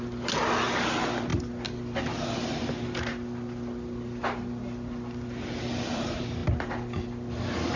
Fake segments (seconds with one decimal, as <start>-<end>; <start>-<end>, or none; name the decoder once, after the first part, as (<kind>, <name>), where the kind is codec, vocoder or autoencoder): none